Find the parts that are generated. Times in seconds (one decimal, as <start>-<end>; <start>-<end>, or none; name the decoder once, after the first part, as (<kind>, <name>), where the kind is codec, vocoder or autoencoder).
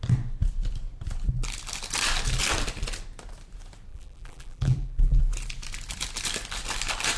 3.9-5.2 (vocoder, BigVGAN v2)